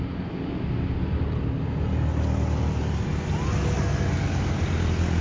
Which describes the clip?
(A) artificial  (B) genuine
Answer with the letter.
B